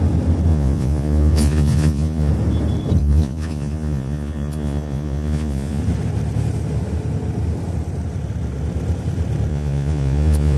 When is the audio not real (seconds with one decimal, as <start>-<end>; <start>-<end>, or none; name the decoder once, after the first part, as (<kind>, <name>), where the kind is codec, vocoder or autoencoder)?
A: 0.5-2.3 (vocoder, Vocos); 3.0-5.8; 9.5-10.6